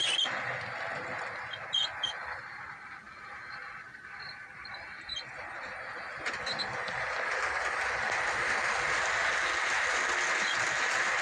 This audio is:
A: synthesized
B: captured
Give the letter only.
B